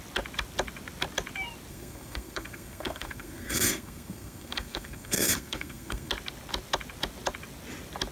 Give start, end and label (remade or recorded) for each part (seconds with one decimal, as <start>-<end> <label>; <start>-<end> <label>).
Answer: 0.0-1.7 recorded; 1.7-6.1 remade; 6.1-8.1 recorded